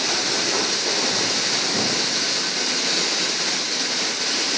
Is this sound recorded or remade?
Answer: recorded